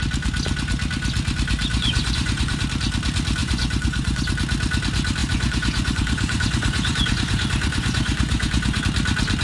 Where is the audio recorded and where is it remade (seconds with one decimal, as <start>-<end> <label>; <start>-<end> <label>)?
0.0-1.7 recorded; 1.7-2.6 remade; 2.6-3.4 recorded; 3.4-4.3 remade; 4.3-5.2 recorded; 5.2-8.8 remade; 8.8-9.4 recorded